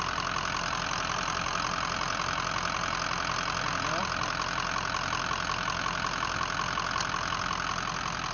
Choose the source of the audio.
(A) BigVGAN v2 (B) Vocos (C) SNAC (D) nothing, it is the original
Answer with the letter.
D